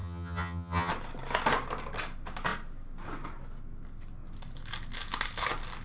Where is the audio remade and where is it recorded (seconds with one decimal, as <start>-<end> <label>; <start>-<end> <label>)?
0.0-0.9 remade; 0.9-5.8 recorded